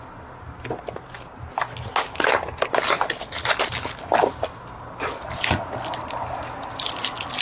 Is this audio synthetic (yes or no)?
no